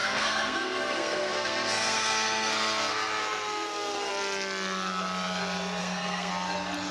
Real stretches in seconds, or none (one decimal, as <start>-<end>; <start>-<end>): 4.1-5.8; 6.3-6.9